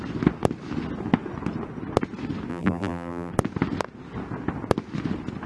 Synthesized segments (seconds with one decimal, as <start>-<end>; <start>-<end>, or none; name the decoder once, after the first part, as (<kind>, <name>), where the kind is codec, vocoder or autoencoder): 2.5-3.3 (vocoder, BigVGAN v2)